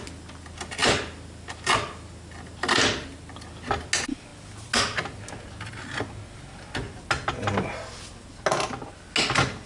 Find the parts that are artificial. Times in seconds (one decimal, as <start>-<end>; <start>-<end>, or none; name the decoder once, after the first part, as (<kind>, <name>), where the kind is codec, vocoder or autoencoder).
none